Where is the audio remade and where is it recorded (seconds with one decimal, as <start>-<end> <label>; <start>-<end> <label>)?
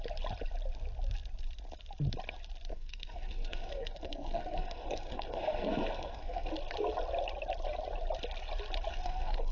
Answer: 0.0-2.7 recorded; 2.7-6.5 remade; 6.5-8.9 recorded; 8.9-9.5 remade